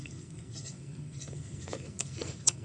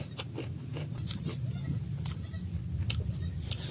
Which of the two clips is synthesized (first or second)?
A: first